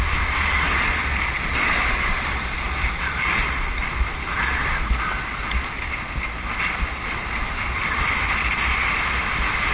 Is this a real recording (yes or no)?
yes